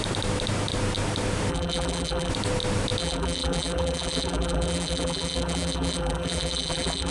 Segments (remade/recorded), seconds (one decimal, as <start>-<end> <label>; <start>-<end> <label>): 0.0-1.5 recorded; 1.5-2.3 remade; 2.3-3.0 recorded; 3.0-7.1 remade